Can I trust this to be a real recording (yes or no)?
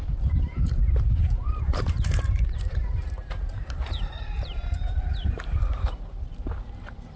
no